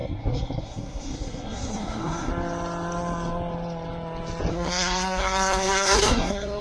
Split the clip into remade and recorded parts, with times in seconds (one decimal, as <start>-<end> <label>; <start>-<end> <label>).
0.0-2.3 remade; 2.3-4.5 recorded; 4.5-6.6 remade